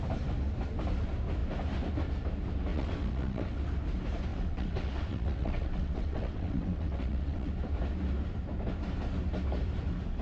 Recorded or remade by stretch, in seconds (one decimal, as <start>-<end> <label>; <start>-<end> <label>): 0.0-2.7 recorded; 2.7-3.6 remade; 3.6-4.3 recorded; 4.3-7.5 remade; 7.5-10.2 recorded